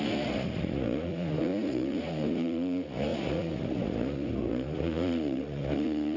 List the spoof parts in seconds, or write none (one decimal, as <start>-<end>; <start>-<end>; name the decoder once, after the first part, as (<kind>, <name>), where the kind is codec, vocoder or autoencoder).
0.0-6.2 (vocoder, Vocos)